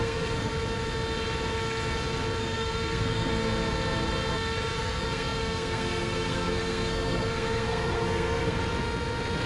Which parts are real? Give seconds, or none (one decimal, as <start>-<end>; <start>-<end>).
0.5-2.4; 3.3-4.8; 8.6-9.5